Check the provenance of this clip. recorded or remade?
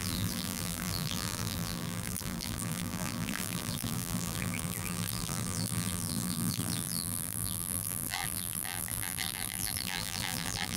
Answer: remade